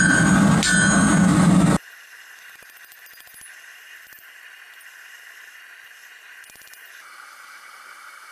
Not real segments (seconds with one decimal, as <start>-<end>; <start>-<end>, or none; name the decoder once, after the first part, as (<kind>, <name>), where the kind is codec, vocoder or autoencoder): 1.3-4.4 (vocoder, BigVGAN v2)